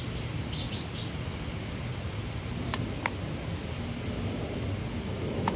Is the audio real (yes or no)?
yes